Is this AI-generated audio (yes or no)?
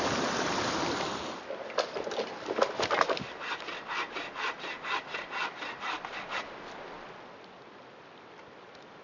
no